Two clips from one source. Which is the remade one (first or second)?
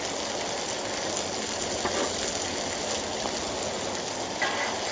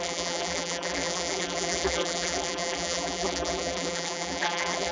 second